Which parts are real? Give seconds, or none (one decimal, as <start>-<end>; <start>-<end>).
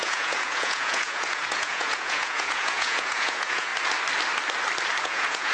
3.7-5.0